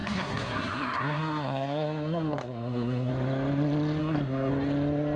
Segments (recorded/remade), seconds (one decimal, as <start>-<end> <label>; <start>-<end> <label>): 0.0-3.1 remade; 3.1-4.0 recorded; 4.0-4.5 remade; 4.5-5.2 recorded